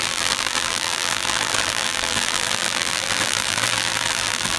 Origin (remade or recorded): remade